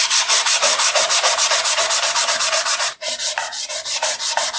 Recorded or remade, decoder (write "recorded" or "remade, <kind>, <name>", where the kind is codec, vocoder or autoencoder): remade, vocoder, BigVGAN v2